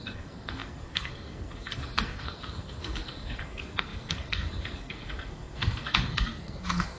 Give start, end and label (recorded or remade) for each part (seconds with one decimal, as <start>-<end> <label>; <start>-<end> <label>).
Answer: 0.0-7.0 remade